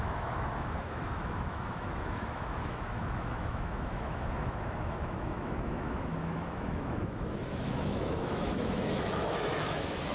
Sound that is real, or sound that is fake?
fake